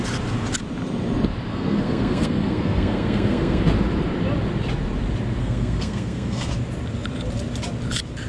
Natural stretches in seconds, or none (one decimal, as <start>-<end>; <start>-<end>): 0.0-1.5; 3.6-5.4; 6.5-8.3